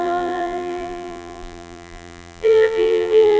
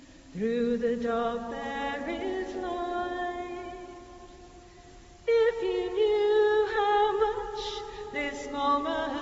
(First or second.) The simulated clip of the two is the first